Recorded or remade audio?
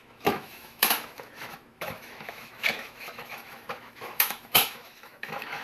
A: remade